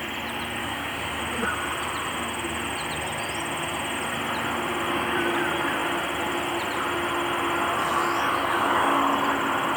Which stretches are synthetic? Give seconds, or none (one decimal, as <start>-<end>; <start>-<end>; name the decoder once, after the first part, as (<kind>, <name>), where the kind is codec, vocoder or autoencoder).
0.6-1.2 (codec, DAC); 7.8-9.0